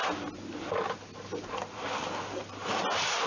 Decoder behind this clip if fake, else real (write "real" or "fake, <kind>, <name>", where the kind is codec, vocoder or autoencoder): real